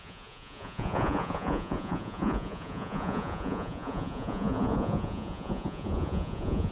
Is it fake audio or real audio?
fake